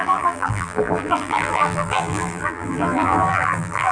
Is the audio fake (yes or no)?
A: yes